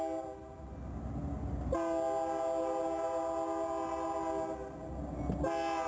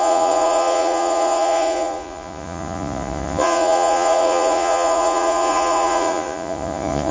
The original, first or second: first